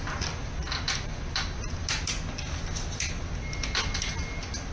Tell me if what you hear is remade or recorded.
recorded